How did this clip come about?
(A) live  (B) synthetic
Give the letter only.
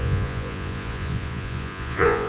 B